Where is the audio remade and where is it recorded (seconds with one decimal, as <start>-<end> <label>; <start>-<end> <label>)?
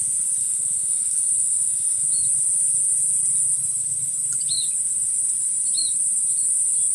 0.0-0.4 recorded; 0.4-2.1 remade; 2.1-6.9 recorded